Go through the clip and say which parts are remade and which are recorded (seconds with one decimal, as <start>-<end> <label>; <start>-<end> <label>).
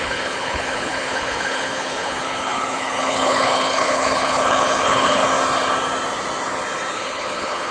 0.0-5.2 remade; 5.2-6.9 recorded; 6.9-7.7 remade